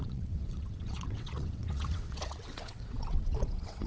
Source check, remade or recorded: remade